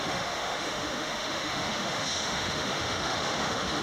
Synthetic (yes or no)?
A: yes